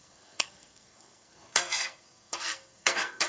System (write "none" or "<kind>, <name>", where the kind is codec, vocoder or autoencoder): codec, SNAC